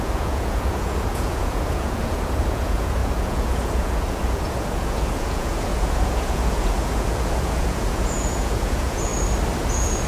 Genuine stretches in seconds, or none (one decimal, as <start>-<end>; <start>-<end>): 9.1-9.7